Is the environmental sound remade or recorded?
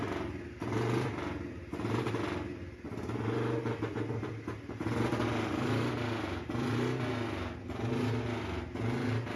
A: recorded